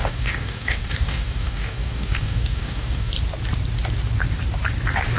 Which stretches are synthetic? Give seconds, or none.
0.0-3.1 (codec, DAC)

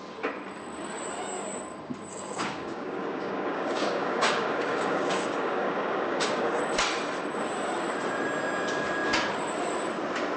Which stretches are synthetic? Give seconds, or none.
2.1-6.6 (codec, DAC)

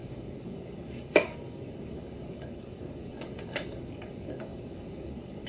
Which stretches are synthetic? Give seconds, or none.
0.0-5.5 (codec, DAC)

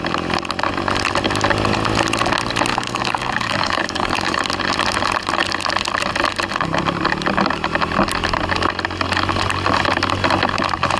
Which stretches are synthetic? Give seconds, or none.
2.7-4.4 (codec, DAC)

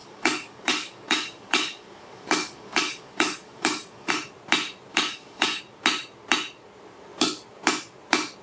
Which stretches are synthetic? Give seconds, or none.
0.0-4.1 (codec, DAC); 4.9-5.6

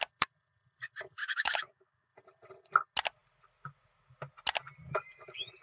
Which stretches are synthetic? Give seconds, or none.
1.2-2.1 (codec, DAC)

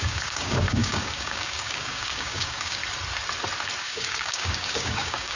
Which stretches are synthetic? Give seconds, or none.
0.0-2.8 (codec, DAC); 3.8-5.4

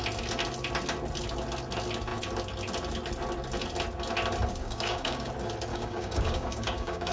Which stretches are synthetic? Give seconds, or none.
4.6-5.3 (codec, DAC); 5.7-7.1